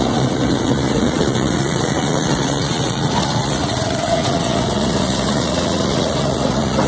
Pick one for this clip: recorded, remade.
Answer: remade